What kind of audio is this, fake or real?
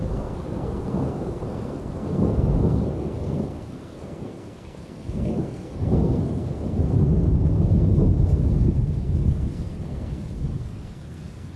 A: fake